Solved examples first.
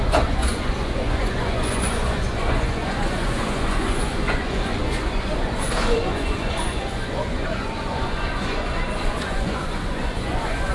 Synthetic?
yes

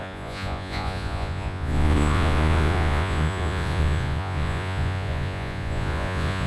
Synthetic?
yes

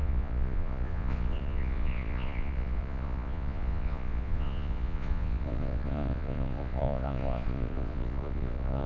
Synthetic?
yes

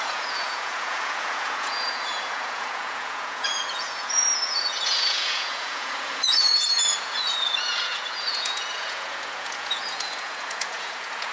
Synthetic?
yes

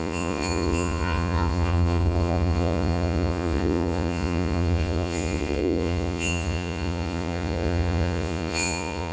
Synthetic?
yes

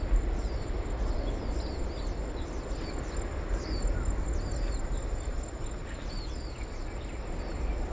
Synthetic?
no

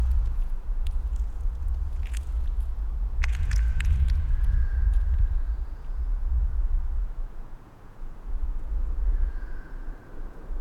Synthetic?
yes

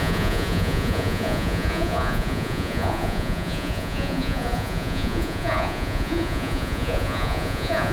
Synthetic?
yes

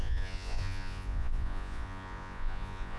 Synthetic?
yes